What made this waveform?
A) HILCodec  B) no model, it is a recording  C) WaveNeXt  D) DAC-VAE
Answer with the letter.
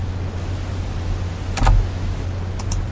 B